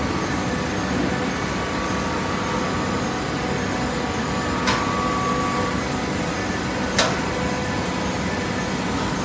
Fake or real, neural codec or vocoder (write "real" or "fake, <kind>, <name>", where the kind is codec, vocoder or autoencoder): real